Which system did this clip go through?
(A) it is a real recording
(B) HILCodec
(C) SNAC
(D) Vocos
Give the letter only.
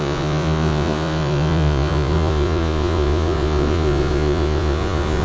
D